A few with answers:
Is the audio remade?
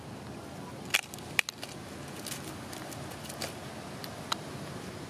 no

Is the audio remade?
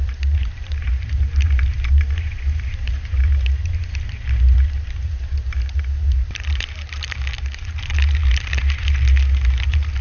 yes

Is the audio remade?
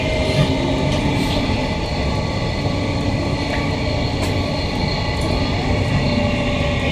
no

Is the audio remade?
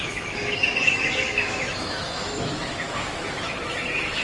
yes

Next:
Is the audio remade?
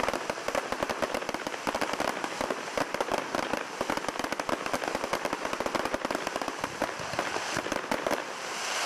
yes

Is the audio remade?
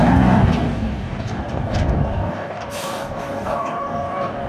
yes